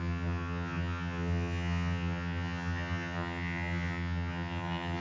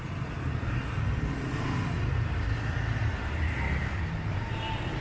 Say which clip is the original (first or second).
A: second